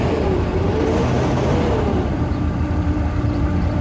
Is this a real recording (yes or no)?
no